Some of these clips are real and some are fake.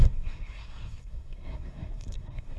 fake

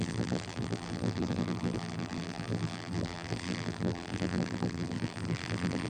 fake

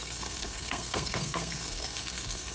fake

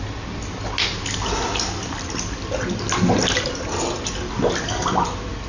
real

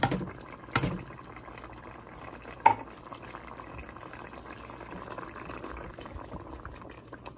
real